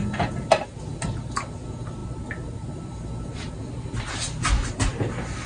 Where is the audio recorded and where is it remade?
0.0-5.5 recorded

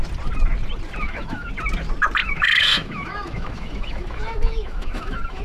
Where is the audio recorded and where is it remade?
0.0-1.0 recorded; 1.0-1.5 remade; 1.5-2.2 recorded; 2.2-5.4 remade

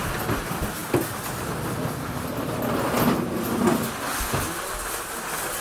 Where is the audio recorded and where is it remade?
0.0-5.6 recorded

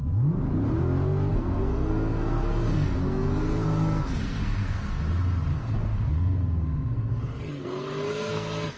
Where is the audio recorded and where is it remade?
0.0-1.3 recorded; 1.3-5.0 remade; 5.0-5.5 recorded; 5.5-8.8 remade

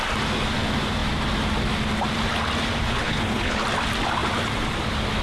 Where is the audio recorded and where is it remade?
0.0-2.9 recorded; 2.9-3.6 remade; 3.6-5.2 recorded

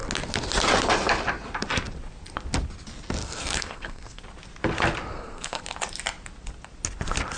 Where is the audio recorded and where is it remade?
0.0-3.2 recorded; 3.2-4.2 remade; 4.2-5.1 recorded; 5.1-5.6 remade; 5.6-7.4 recorded

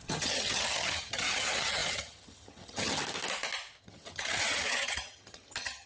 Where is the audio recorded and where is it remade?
0.0-3.0 remade; 3.0-3.8 recorded; 3.8-5.9 remade

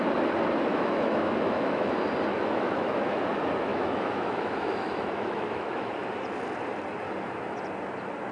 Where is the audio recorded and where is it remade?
0.0-0.7 recorded; 0.7-1.9 remade; 1.9-2.3 recorded; 2.3-3.2 remade; 3.2-3.7 recorded; 3.7-5.9 remade; 5.9-8.3 recorded